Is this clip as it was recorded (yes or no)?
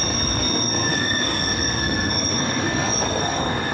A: no